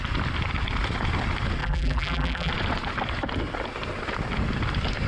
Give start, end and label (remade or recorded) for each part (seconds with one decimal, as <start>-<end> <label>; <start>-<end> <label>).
0.0-1.6 recorded; 1.6-2.5 remade; 2.5-5.1 recorded